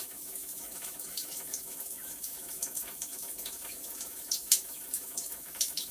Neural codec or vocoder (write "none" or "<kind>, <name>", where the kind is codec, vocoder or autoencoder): autoencoder, DAC-VAE